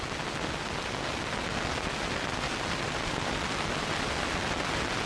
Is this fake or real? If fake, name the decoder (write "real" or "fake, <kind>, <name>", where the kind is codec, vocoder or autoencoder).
real